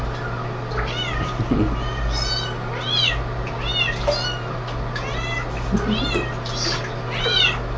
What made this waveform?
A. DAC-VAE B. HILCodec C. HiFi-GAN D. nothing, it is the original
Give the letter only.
D